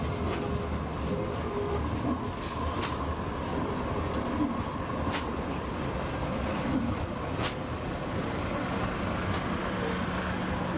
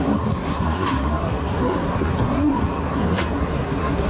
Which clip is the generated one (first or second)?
second